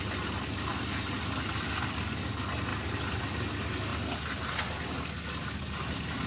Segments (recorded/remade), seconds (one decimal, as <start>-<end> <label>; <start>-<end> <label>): 0.0-2.7 recorded; 2.7-3.2 remade; 3.2-6.3 recorded